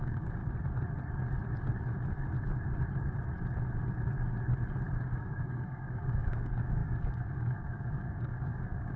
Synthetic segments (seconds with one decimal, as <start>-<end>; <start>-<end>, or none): 0.0-0.4; 5.0-9.0